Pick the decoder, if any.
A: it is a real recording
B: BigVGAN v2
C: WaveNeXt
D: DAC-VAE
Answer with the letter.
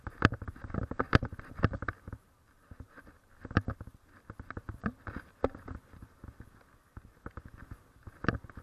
B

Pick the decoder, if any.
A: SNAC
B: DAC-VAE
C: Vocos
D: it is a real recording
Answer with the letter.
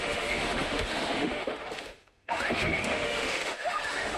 B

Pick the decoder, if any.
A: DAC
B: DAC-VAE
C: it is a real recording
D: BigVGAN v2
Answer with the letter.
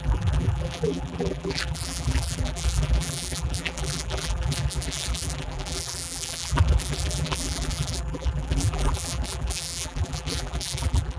D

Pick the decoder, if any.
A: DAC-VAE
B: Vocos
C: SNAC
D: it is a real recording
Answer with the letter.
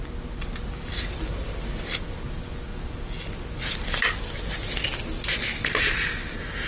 D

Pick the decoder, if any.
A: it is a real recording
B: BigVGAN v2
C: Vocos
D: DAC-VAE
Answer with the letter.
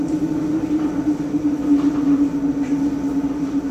A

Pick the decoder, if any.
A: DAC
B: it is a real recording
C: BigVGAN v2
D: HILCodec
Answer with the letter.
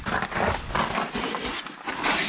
B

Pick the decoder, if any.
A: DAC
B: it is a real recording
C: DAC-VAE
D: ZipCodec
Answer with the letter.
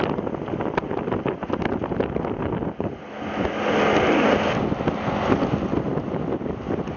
B